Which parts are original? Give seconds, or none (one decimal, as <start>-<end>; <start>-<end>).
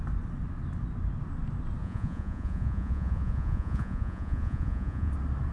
0.0-1.8; 5.1-5.5